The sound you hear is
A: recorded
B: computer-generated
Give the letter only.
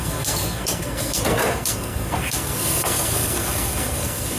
B